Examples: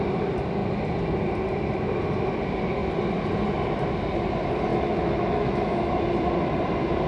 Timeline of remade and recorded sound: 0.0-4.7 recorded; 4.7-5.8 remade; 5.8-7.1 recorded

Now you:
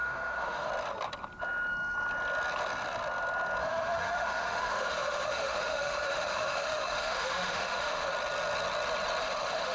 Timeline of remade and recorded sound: 0.0-0.7 remade; 0.7-3.6 recorded; 3.6-8.1 remade; 8.1-9.2 recorded; 9.2-9.7 remade

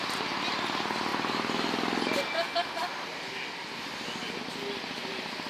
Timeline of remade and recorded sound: 0.0-5.5 recorded

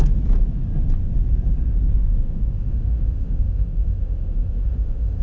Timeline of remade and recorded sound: 0.0-2.0 recorded; 2.0-5.2 remade

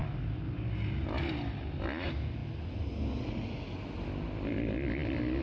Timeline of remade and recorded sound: 0.0-5.4 recorded

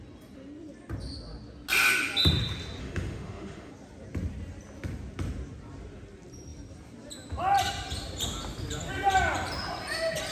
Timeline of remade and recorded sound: 0.0-2.8 recorded; 2.8-3.7 remade; 3.7-10.3 recorded

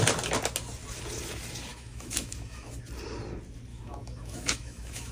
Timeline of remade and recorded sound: 0.0-1.7 recorded; 1.7-2.8 remade; 2.8-3.7 recorded; 3.7-5.1 remade

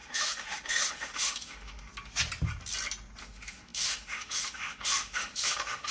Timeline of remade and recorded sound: 0.0-1.9 remade; 1.9-3.2 recorded; 3.2-5.9 remade